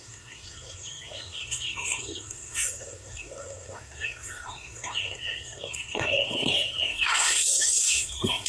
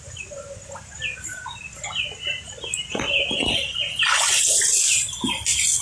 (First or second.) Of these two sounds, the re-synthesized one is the first